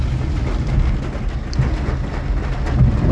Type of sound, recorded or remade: recorded